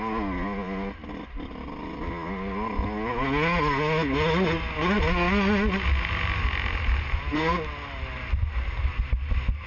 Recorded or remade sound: recorded